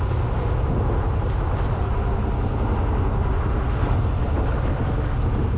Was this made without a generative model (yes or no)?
yes